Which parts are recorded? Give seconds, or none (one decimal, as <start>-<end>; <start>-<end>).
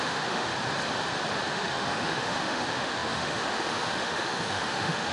0.5-1.5